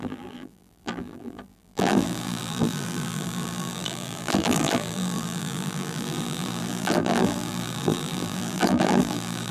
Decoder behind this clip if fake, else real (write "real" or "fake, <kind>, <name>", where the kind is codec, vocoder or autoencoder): fake, vocoder, BigVGAN v2